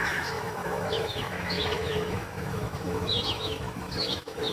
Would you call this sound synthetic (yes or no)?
yes